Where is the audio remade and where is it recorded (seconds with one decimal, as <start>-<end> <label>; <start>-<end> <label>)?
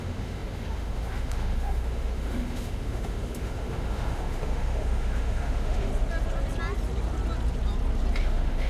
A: 0.0-5.9 remade; 5.9-8.2 recorded; 8.2-8.7 remade